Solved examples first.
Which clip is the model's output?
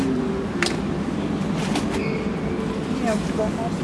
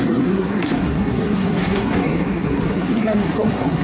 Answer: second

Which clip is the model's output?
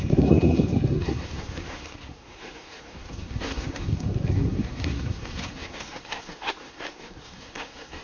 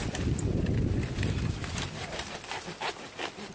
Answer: first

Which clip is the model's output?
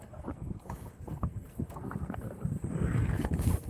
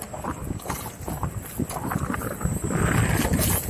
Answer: first